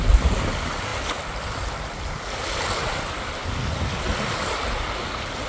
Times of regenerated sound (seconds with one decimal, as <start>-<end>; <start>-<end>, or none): none